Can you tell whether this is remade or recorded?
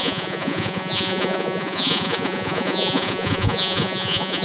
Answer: remade